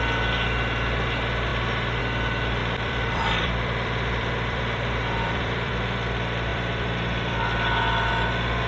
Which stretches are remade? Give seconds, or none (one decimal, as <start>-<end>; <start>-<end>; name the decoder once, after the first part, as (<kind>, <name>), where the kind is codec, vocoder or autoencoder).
2.6-5.7 (vocoder, BigVGAN v2); 6.5-8.1